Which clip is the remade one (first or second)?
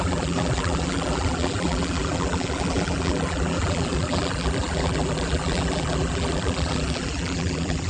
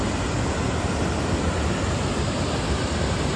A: first